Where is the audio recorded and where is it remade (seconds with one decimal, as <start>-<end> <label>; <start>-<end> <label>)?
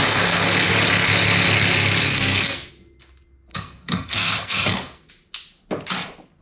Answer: 0.0-0.7 remade; 0.7-2.0 recorded; 2.0-2.7 remade; 2.7-3.5 recorded; 3.5-5.1 remade; 5.1-6.4 recorded